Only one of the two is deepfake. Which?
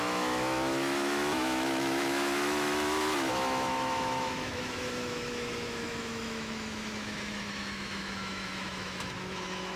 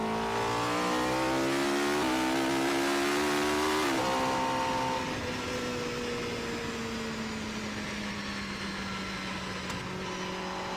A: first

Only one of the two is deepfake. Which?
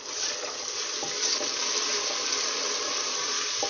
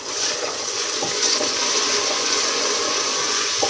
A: second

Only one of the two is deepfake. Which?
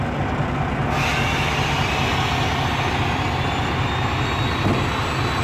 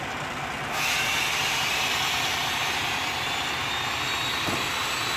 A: second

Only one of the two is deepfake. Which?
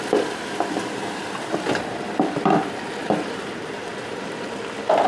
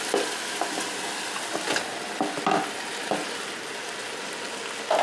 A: first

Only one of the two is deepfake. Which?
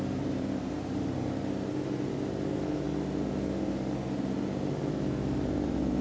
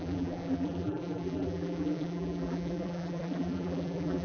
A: second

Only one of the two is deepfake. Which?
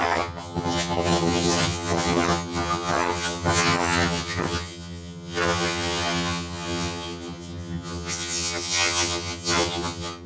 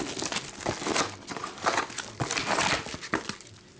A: first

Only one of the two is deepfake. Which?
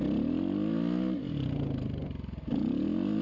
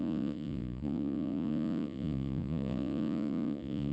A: second